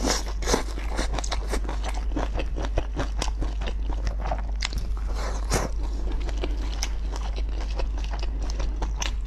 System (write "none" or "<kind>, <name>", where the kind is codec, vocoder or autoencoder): none